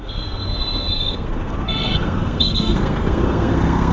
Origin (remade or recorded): remade